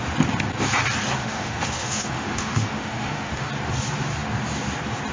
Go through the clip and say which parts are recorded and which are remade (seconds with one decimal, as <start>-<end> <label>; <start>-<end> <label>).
0.0-1.2 recorded; 1.2-3.5 remade; 3.5-5.1 recorded